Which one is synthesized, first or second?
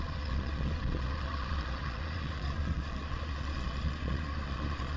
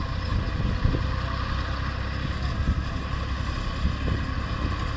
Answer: first